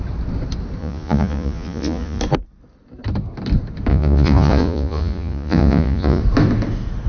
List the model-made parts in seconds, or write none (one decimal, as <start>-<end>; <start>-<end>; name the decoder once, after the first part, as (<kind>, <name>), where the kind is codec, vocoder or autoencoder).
0.8-2.2 (vocoder, Vocos); 3.9-6.2